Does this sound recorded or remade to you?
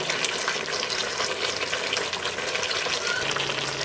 recorded